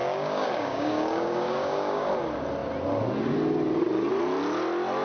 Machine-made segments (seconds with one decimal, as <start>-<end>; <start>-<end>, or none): 0.0-2.1